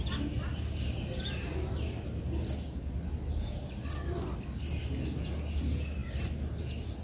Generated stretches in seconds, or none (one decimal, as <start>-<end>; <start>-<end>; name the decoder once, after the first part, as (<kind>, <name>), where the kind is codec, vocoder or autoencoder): none